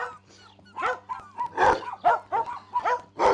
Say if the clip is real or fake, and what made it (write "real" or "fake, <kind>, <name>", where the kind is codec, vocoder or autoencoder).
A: real